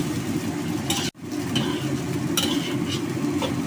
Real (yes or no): yes